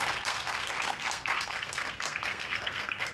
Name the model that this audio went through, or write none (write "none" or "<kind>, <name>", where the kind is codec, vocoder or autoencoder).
codec, SNAC